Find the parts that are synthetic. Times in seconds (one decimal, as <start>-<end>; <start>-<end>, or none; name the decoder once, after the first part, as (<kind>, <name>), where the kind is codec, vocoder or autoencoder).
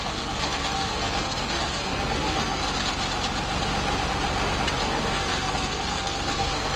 0.0-2.6 (codec, SNAC); 4.8-6.8